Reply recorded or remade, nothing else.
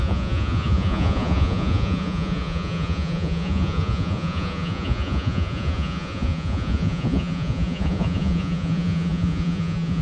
remade